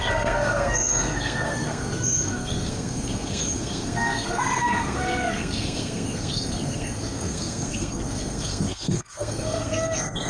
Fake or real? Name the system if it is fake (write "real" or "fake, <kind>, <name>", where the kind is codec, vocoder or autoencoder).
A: fake, codec, SNAC